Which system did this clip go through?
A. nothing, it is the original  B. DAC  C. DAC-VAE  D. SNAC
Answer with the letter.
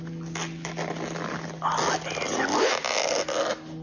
A